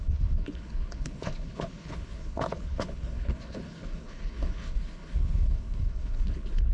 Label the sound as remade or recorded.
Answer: remade